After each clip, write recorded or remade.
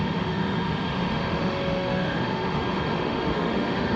remade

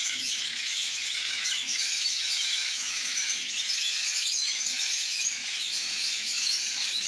remade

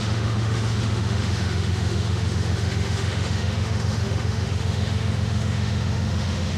remade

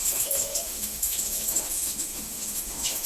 remade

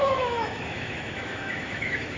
remade